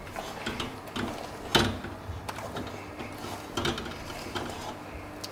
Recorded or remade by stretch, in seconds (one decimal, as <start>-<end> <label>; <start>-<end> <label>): 0.0-5.3 recorded